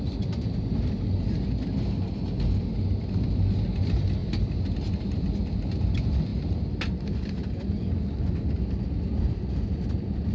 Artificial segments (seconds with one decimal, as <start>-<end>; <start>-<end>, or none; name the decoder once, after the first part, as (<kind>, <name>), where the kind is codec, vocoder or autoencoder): none